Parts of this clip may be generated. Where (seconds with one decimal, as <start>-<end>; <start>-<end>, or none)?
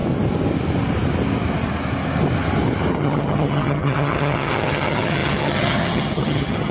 2.9-6.7